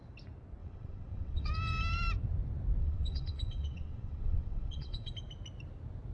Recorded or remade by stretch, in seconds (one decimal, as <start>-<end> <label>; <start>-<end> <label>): 0.0-0.6 recorded; 0.6-1.5 remade; 1.5-2.8 recorded; 2.8-5.1 remade; 5.1-6.1 recorded